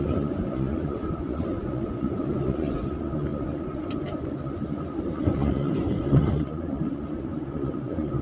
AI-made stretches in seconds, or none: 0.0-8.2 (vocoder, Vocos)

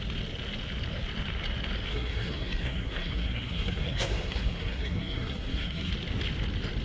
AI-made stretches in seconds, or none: 1.9-5.9 (codec, SNAC)

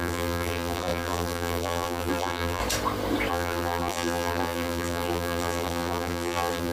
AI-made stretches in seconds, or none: 0.0-2.6 (vocoder, BigVGAN v2); 3.3-6.7

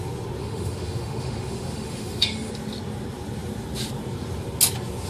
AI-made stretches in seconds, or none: 0.4-2.5 (autoencoder, DAC-VAE)

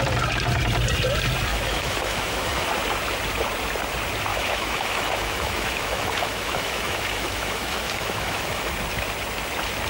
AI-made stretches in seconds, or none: 1.5-2.7 (autoencoder, DAC-VAE); 4.3-8.7

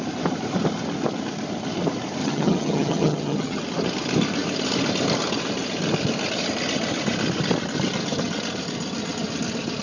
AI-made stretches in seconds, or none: 2.2-3.6 (vocoder, HiFi-GAN)

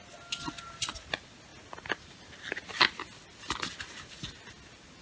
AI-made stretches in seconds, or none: none

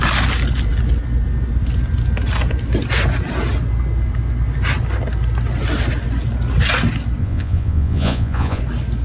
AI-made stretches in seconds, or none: 7.2-8.6 (vocoder, Vocos)